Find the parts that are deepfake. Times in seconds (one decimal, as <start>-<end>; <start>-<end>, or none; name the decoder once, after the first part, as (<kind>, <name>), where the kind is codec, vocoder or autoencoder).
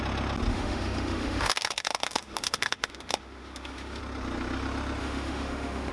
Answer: 0.5-4.0 (autoencoder, DAC-VAE); 5.0-5.9